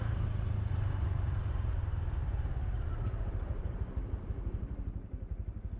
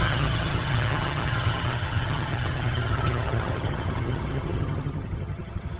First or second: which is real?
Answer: first